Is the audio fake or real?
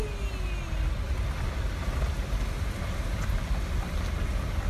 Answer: real